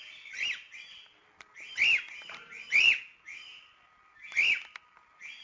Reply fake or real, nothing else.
real